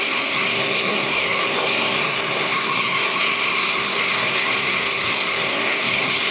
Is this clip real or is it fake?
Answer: fake